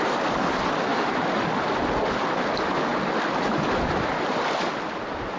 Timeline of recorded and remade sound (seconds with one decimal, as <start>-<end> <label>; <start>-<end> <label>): 0.0-5.4 recorded